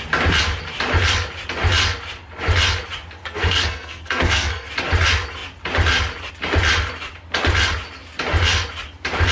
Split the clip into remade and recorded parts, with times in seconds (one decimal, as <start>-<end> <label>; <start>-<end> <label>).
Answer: 0.0-3.2 recorded; 3.2-4.7 remade; 4.7-9.3 recorded